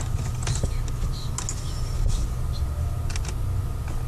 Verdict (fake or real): real